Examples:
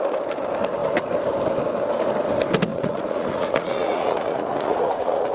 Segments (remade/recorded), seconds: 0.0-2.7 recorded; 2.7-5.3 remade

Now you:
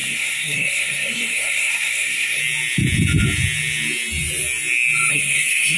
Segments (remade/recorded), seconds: 0.0-2.4 remade; 2.4-5.1 recorded; 5.1-5.8 remade